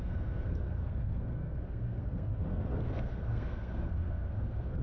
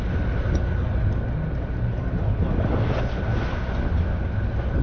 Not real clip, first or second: first